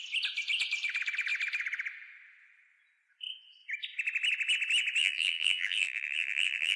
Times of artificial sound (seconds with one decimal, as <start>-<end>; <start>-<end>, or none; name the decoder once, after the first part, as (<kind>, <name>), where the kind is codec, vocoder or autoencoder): 5.0-6.8 (vocoder, BigVGAN v2)